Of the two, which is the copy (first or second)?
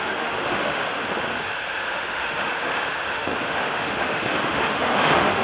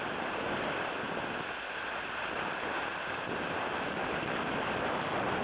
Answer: first